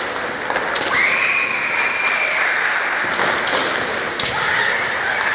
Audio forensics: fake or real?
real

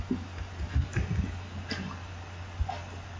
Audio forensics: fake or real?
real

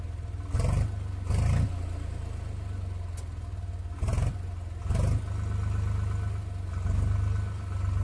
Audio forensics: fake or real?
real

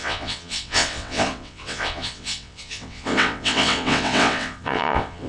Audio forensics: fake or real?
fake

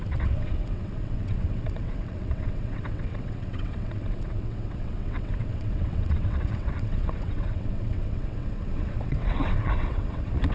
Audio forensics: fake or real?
fake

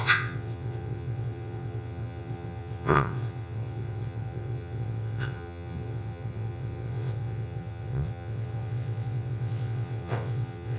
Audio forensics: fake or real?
fake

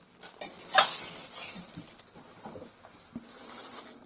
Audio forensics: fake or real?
real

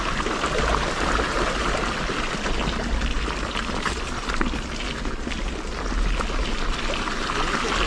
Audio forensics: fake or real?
real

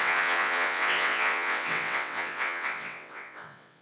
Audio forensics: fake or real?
fake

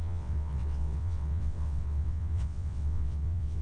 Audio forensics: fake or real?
fake